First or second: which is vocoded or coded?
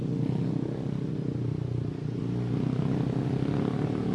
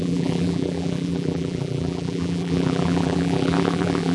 second